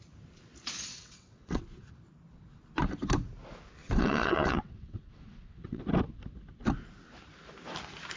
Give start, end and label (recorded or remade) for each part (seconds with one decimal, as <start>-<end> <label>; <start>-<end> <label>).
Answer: 0.0-0.9 recorded; 0.9-1.6 remade; 1.6-3.8 recorded; 3.8-5.8 remade; 5.8-8.2 recorded